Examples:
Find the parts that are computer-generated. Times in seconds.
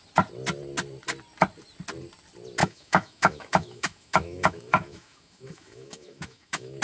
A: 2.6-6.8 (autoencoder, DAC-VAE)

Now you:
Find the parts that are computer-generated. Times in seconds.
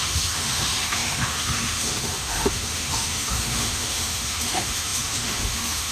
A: 0.0-5.9 (autoencoder, DAC-VAE)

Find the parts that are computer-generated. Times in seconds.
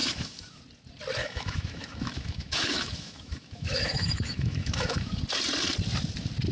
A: 0.0-0.6 (autoencoder, DAC-VAE); 1.2-5.1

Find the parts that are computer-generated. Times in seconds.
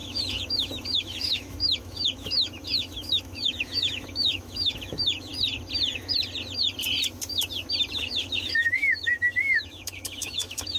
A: 0.0-5.3 (autoencoder, DAC-VAE); 7.9-10.8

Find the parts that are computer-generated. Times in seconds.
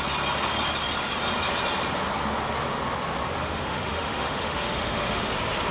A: 3.4-5.3 (autoencoder, DAC-VAE)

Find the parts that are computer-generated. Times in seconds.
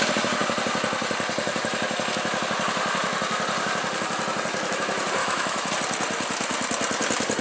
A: 5.2-5.7 (autoencoder, DAC-VAE)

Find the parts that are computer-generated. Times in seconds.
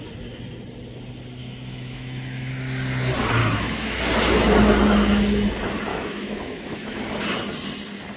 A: 1.4-2.5 (autoencoder, DAC-VAE); 3.4-4.0; 5.9-7.0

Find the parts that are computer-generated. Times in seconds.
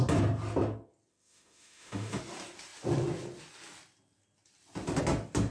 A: 1.1-2.2 (autoencoder, DAC-VAE)